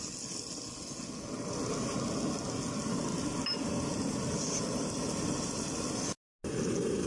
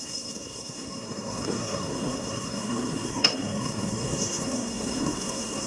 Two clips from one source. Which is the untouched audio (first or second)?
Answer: first